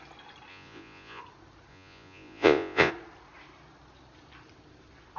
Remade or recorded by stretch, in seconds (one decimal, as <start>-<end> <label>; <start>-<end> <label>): 0.0-0.5 recorded; 0.5-1.2 remade; 1.2-1.7 recorded; 1.7-2.9 remade; 2.9-5.2 recorded